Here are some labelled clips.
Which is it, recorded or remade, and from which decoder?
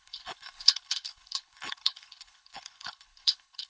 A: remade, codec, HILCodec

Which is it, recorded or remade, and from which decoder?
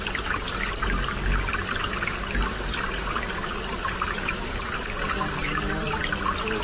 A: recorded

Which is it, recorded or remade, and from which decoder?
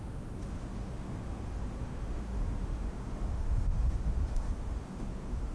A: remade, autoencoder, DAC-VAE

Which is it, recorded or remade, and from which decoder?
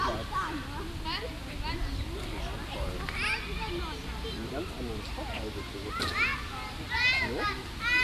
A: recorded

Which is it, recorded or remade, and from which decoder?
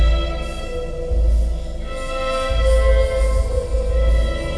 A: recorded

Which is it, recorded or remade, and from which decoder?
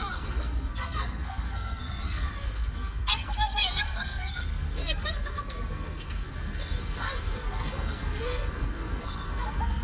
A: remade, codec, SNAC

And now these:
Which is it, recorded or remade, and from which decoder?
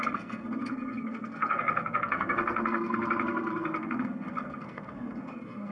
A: remade, codec, SNAC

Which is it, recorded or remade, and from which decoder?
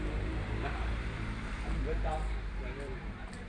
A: remade, vocoder, BigVGAN v2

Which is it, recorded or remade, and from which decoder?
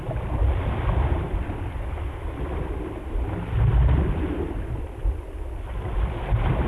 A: recorded